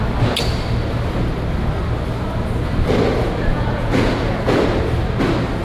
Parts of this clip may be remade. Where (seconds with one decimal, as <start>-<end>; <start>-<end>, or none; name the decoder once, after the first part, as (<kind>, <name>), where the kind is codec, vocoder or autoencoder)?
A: 3.5-4.6 (vocoder, Vocos)